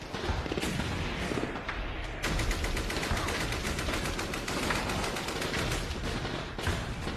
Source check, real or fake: real